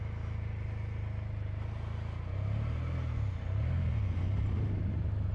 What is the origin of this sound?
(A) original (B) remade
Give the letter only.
A